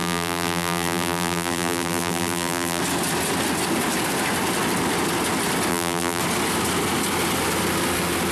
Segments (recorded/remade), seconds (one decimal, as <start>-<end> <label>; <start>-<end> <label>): 0.0-2.8 remade; 2.8-5.7 recorded; 5.7-6.2 remade; 6.2-8.3 recorded